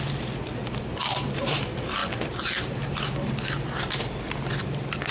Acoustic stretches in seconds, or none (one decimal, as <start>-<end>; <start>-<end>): none